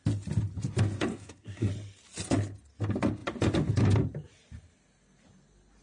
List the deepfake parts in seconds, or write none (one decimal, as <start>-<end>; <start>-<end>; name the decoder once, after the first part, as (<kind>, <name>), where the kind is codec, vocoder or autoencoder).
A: 1.1-1.7 (codec, SNAC)